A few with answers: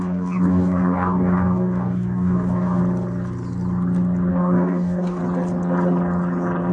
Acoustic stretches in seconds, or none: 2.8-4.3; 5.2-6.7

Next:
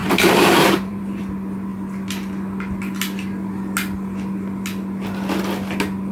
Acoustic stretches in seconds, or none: 1.2-6.1

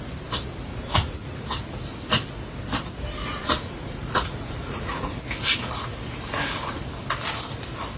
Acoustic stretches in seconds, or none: 0.0-0.7; 1.4-3.2; 5.2-8.0

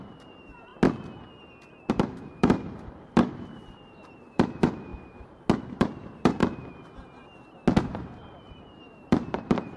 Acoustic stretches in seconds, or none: 0.7-1.9; 4.9-5.6; 6.4-7.8

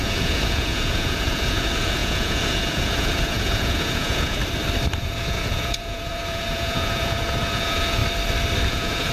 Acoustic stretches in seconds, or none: 4.4-5.0; 8.0-8.7

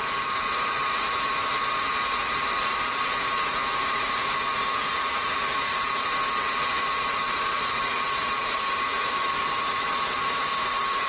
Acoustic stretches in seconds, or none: none